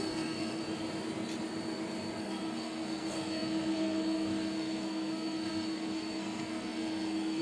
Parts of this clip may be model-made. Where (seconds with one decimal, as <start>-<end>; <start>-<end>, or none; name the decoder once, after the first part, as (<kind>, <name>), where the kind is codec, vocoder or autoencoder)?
0.0-0.6 (codec, SNAC); 2.2-7.4